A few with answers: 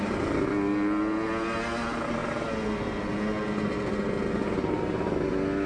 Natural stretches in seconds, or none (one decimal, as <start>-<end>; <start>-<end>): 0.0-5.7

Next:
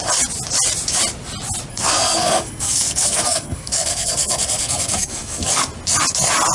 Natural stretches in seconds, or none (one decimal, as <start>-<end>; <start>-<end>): 0.0-1.7; 5.6-6.5

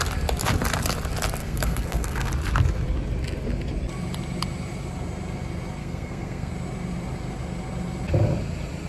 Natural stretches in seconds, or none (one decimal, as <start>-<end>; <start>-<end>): 0.0-1.4; 2.3-5.8; 6.5-8.9